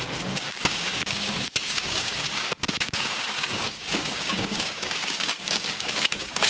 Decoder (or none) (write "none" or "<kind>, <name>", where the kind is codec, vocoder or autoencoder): codec, DAC